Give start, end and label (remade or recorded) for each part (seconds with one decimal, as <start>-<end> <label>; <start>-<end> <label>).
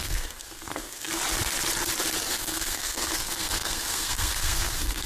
0.0-1.1 remade; 1.1-2.3 recorded; 2.3-5.1 remade